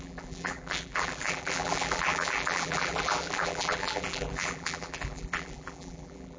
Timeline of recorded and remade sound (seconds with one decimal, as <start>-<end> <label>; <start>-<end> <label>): 0.0-6.4 remade